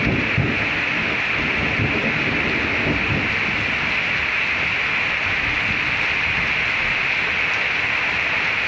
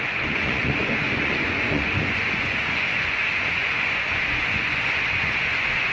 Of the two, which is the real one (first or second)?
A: first